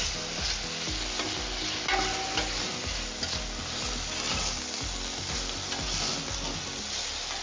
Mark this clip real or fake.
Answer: real